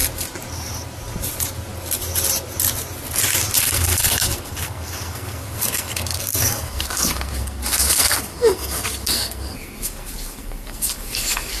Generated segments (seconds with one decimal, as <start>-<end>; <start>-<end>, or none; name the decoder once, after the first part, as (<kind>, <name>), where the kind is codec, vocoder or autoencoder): 3.6-11.6 (codec, SNAC)